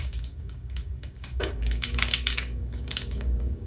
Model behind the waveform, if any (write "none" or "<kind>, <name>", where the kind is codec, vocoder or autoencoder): codec, DAC